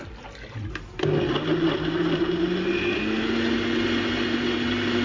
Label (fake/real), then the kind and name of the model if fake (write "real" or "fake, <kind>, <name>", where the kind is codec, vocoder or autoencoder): real